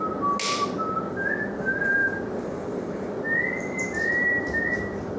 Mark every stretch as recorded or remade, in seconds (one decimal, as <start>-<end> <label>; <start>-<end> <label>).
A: 0.0-2.0 recorded; 2.0-5.2 remade